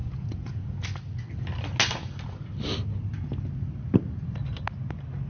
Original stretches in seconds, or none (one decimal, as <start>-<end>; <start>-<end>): 0.8-5.3